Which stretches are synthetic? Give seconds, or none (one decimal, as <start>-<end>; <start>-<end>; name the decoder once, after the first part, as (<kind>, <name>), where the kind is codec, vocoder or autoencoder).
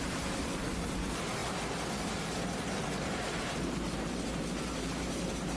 0.0-5.6 (vocoder, BigVGAN v2)